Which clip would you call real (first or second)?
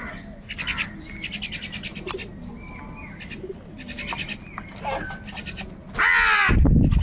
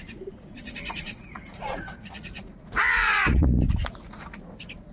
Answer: first